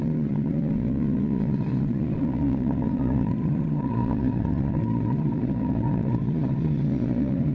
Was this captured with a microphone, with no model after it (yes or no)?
no